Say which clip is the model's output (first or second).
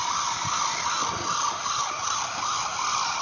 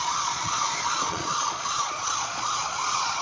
second